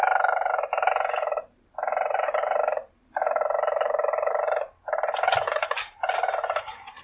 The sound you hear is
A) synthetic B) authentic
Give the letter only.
A